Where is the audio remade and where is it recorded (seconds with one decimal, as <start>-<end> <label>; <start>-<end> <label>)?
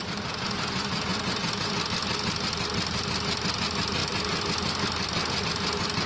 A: 0.0-6.1 recorded